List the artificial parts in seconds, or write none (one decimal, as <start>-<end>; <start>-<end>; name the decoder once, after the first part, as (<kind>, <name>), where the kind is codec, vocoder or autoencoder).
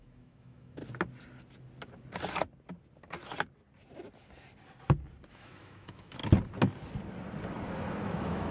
0.0-0.8 (autoencoder, DAC-VAE); 5.3-6.2; 8.0-8.5